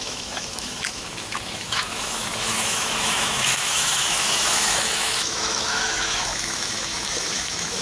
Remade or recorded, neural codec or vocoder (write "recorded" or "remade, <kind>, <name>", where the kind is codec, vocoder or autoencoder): remade, autoencoder, DAC-VAE